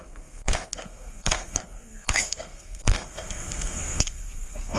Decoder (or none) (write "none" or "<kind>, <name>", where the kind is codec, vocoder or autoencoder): codec, SNAC